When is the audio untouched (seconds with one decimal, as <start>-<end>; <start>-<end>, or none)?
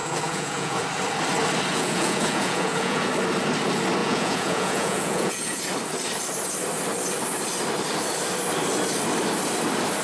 0.8-1.7; 3.1-4.0; 5.6-10.0